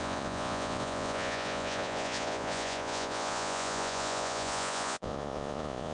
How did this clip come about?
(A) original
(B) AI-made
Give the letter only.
B